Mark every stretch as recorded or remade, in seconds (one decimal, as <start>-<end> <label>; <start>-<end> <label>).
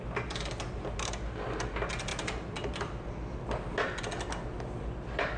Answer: 0.0-5.4 recorded